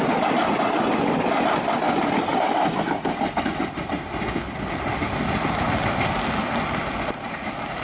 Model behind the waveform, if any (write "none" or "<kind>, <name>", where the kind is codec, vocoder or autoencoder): none